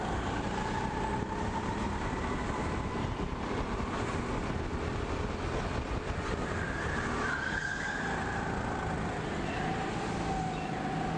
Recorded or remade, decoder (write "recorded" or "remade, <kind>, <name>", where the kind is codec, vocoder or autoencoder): recorded